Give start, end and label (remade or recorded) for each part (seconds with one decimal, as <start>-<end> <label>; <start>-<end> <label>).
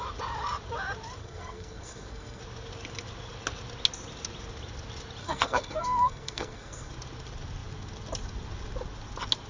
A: 0.0-1.2 recorded; 1.2-2.4 remade; 2.4-5.2 recorded; 5.2-6.9 remade; 6.9-9.5 recorded